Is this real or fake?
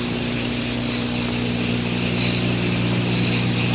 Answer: real